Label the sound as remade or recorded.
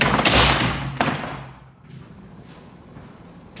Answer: recorded